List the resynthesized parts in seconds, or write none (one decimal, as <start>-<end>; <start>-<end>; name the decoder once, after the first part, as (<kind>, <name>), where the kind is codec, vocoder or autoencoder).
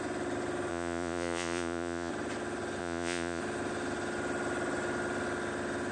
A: 0.7-2.1 (vocoder, Vocos); 2.8-3.4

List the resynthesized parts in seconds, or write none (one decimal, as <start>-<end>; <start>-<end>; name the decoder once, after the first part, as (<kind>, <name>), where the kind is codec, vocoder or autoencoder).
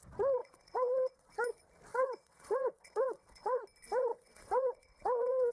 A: 0.4-1.3 (vocoder, WaveNeXt); 1.9-3.6; 4.1-5.5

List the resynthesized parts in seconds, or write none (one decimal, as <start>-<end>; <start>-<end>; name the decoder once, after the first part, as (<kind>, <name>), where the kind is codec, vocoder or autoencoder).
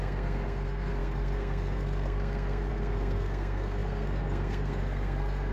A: 0.0-5.5 (codec, SNAC)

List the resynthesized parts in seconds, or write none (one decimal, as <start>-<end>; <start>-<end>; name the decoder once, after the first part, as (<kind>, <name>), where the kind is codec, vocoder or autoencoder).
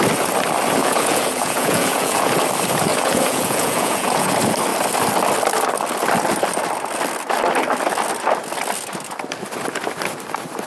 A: 0.8-2.3 (vocoder, Vocos); 2.9-4.3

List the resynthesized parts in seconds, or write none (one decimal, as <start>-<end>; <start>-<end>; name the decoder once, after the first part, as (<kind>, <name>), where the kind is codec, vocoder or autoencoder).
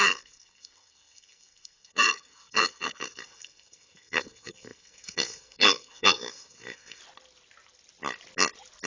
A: 0.0-7.0 (codec, SNAC)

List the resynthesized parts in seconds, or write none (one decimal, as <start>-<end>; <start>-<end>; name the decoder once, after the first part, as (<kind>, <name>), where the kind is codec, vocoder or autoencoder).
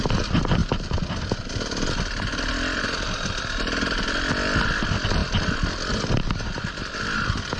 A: none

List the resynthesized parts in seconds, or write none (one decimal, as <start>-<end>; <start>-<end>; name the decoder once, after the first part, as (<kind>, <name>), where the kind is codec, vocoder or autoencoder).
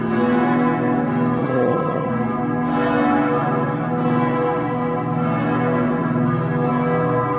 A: 1.4-2.1 (vocoder, HiFi-GAN)